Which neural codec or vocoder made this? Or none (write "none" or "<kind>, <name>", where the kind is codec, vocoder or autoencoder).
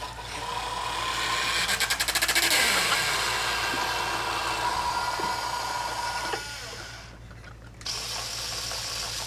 none